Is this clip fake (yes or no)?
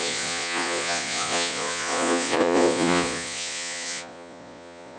yes